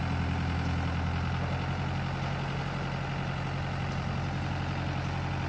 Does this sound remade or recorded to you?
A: recorded